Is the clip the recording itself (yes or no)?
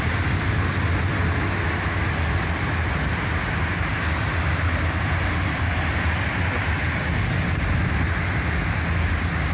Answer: yes